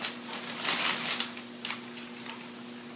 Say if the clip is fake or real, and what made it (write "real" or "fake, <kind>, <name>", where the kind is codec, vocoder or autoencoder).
real